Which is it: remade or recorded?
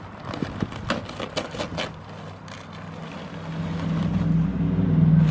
recorded